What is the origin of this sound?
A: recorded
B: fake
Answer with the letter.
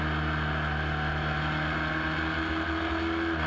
A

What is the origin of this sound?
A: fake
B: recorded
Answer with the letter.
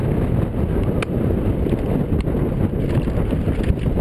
B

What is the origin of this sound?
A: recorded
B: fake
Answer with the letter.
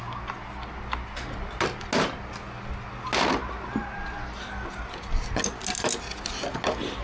A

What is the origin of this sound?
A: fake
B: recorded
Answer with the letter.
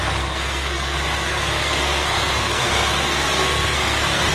A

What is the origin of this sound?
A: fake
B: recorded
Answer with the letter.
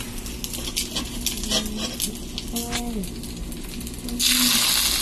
B